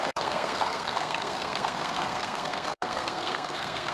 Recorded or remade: remade